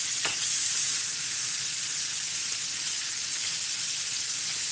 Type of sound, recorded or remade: remade